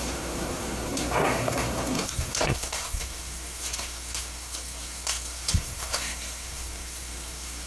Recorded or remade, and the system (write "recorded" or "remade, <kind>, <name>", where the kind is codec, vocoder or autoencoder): remade, codec, SNAC